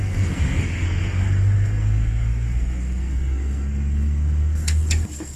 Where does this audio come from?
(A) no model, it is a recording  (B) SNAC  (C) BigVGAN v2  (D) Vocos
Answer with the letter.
B